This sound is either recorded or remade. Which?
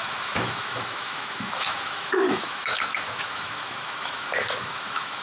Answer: remade